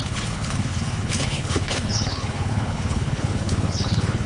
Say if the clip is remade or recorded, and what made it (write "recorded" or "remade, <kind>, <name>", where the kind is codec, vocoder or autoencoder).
remade, codec, HILCodec